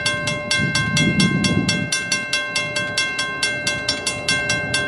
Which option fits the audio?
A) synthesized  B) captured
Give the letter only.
B